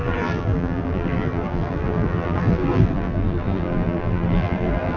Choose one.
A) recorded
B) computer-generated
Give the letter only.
B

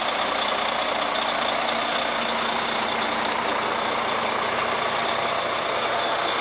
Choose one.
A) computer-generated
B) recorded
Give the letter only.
B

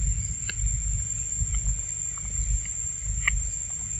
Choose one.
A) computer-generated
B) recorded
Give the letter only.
B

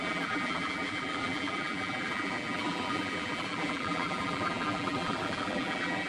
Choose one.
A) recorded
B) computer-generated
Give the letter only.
B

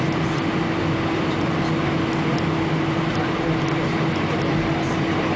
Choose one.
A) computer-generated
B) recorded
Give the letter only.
B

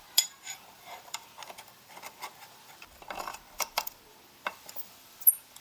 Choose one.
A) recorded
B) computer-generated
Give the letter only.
B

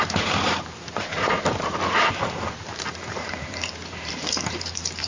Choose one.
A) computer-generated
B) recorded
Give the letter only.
A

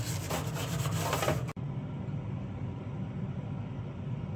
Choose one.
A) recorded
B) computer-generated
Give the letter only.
A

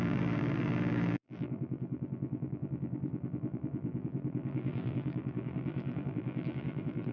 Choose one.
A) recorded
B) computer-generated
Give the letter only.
B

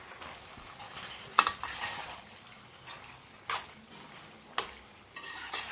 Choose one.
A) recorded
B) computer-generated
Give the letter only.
A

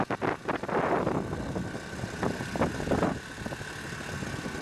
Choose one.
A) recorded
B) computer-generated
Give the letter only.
A